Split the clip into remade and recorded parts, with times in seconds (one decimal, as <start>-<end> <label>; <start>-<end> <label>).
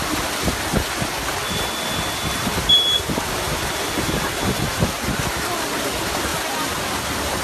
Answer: 0.0-7.4 recorded